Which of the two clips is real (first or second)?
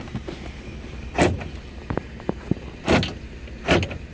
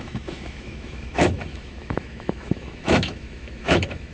first